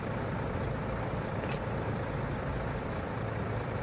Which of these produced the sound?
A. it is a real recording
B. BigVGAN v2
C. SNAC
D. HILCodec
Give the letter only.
A